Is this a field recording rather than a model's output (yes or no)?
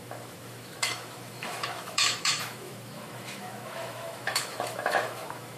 no